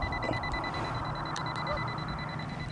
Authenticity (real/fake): real